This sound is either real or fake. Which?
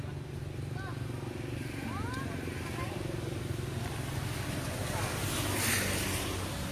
real